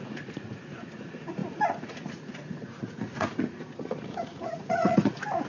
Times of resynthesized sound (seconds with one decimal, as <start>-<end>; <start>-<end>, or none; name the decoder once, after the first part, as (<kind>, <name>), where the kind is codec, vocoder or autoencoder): 0.0-5.5 (vocoder, Vocos)